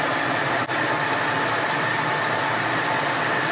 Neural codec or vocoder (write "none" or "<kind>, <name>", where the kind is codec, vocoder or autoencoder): none